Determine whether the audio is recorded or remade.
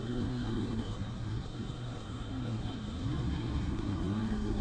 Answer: remade